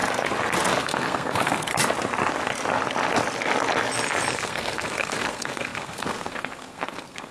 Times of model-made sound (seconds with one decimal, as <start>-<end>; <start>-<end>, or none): 0.8-1.8; 4.3-7.3